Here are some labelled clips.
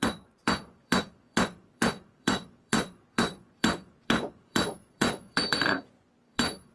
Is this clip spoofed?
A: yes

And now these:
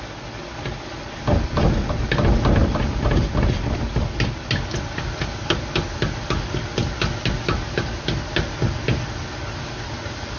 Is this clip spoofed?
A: no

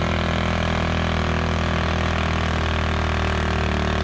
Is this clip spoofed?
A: no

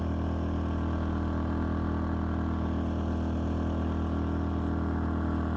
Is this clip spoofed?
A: no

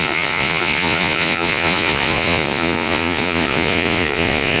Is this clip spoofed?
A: yes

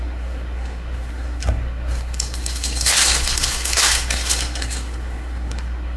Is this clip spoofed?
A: yes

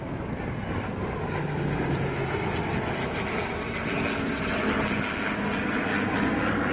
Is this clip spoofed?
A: no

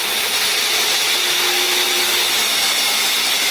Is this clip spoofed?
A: no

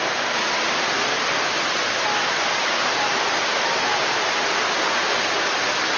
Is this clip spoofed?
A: no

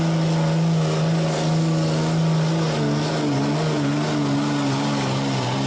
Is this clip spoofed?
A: no